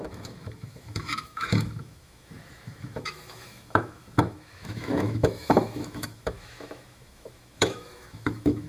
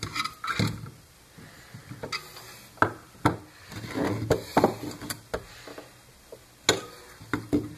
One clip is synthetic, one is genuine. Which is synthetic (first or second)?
first